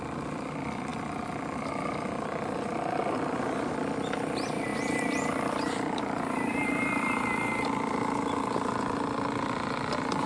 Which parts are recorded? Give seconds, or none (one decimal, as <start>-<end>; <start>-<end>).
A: 0.0-10.3